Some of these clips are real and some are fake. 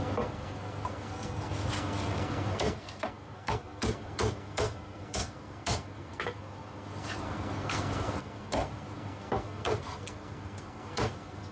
fake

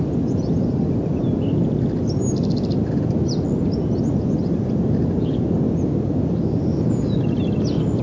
real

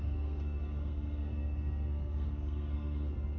fake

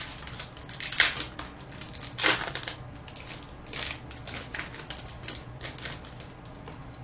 real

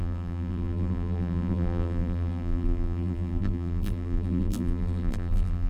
fake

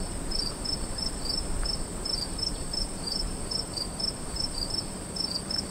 fake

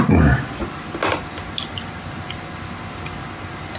real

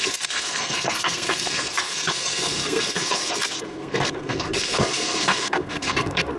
fake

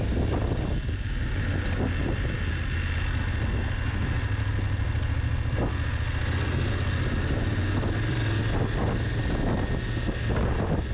real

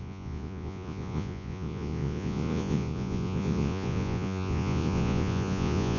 fake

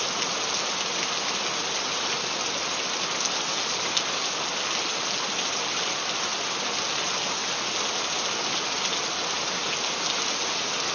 real